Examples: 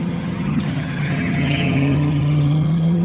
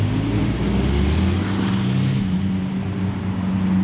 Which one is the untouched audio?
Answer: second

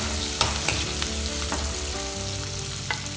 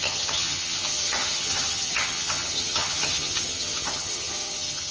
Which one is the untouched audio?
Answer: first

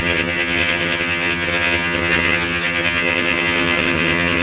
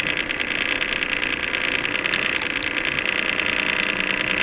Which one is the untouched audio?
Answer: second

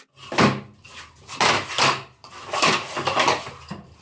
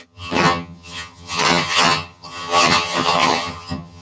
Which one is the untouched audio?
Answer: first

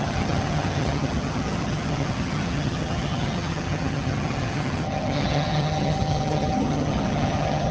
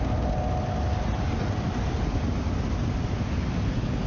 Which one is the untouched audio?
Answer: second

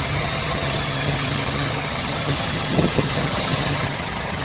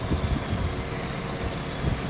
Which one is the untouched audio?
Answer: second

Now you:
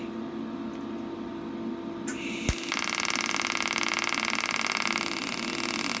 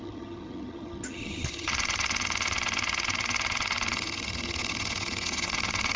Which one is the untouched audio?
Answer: first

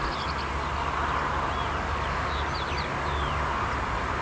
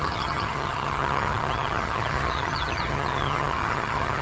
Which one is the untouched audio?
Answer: first